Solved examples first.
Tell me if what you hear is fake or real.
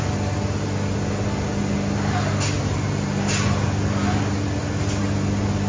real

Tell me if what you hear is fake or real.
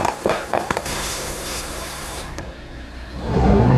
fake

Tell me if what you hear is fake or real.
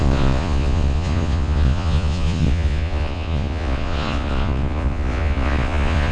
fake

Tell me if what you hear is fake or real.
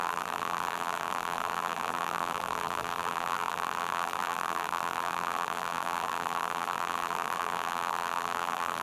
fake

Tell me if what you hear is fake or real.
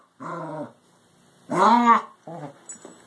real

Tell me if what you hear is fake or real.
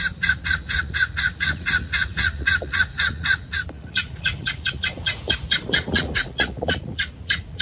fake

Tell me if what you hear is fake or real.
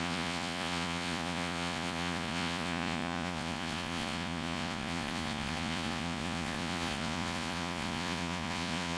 fake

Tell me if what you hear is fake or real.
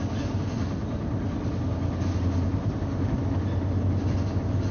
real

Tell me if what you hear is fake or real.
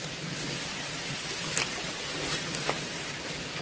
real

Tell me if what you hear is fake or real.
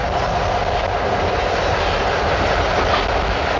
real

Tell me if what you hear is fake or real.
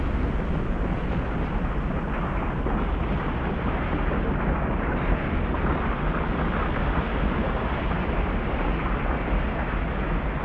real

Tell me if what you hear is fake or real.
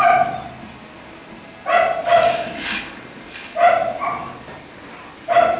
real